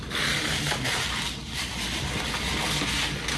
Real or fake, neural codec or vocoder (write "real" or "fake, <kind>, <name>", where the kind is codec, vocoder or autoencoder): real